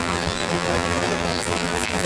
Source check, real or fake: fake